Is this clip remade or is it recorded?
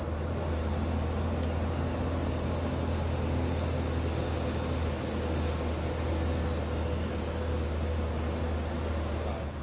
recorded